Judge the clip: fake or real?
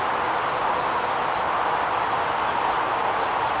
fake